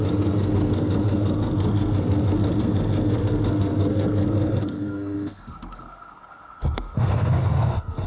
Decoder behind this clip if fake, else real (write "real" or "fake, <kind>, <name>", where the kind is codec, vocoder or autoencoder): fake, codec, SNAC